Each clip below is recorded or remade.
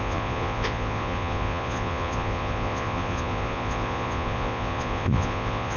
remade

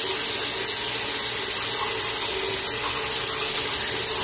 recorded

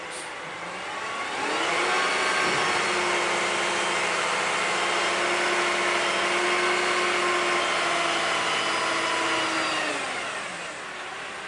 recorded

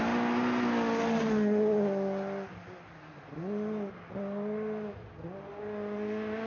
recorded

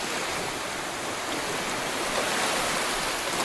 recorded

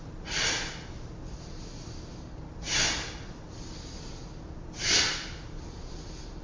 recorded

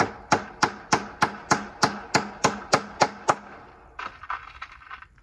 recorded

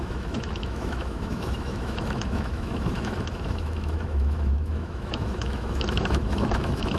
remade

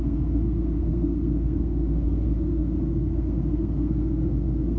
remade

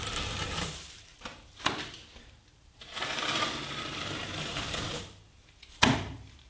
remade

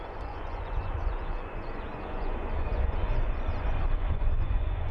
remade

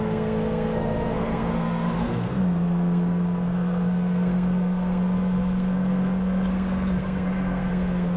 remade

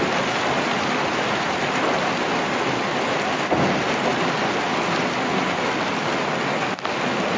recorded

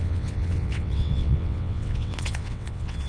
remade